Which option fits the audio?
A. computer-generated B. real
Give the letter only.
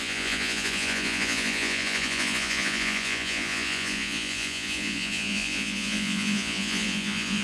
A